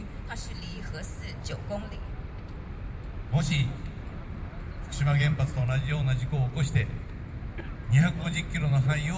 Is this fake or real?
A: fake